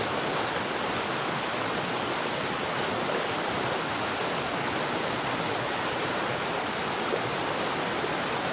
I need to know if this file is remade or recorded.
recorded